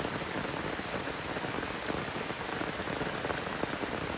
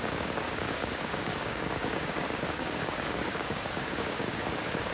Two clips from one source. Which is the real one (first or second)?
first